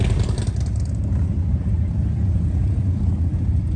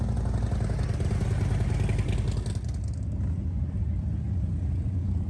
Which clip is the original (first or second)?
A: second